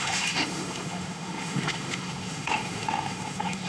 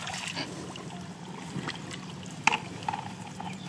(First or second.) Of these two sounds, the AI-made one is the first